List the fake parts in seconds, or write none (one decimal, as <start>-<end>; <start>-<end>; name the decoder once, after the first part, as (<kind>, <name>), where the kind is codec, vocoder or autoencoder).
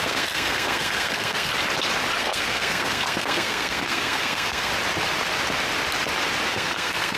0.0-1.5 (codec, SNAC); 2.2-4.7; 6.5-7.2